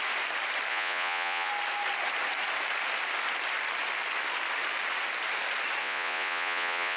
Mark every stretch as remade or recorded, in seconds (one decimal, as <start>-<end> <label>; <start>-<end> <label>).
0.0-0.7 recorded; 0.7-1.5 remade; 1.5-5.8 recorded; 5.8-7.0 remade

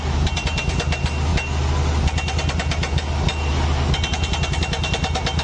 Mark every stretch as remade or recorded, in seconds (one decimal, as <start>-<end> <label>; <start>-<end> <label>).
0.0-5.4 recorded

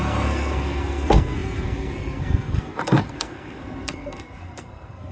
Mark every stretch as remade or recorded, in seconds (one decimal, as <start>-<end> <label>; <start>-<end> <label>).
0.0-5.1 remade

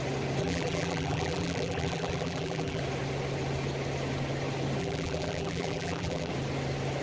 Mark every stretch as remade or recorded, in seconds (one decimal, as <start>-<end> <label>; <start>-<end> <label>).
0.0-0.4 recorded; 0.4-2.8 remade; 2.8-4.8 recorded; 4.8-6.3 remade; 6.3-7.0 recorded